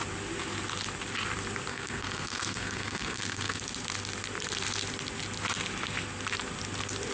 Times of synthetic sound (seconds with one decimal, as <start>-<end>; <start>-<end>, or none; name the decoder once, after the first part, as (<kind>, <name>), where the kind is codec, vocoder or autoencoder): 1.7-3.6 (codec, SNAC)